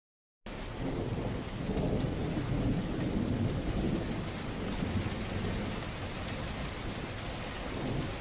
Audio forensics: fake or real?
real